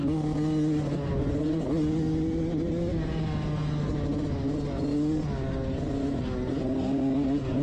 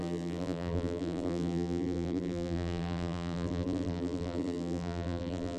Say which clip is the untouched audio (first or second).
first